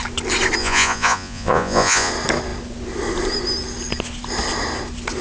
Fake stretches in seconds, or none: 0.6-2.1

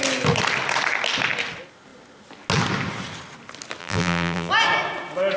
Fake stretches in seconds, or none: 3.8-4.5

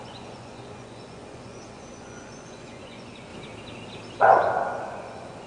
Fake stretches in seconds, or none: 0.0-3.3; 4.2-5.5